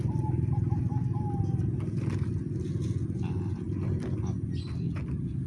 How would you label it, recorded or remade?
recorded